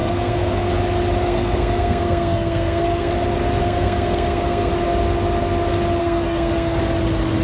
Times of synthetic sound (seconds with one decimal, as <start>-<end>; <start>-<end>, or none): 0.0-0.7; 1.2-3.1; 3.6-4.7; 6.0-6.8